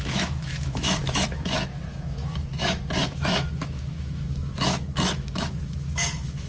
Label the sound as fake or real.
fake